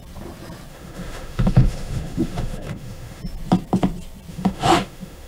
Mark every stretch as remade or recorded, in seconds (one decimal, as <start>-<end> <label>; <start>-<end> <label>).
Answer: 0.0-0.7 recorded; 0.7-3.2 remade; 3.2-4.3 recorded; 4.3-5.3 remade